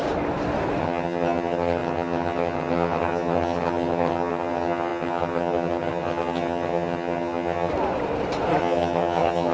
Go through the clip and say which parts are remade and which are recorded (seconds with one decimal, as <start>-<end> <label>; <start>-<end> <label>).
0.0-0.8 recorded; 0.8-7.7 remade; 7.7-8.6 recorded; 8.6-9.5 remade

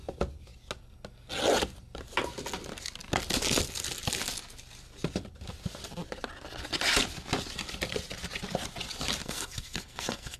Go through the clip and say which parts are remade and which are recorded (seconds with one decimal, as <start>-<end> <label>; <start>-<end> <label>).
0.0-9.2 recorded; 9.2-10.4 remade